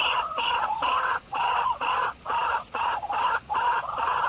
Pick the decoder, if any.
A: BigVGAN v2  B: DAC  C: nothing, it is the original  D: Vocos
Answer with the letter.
D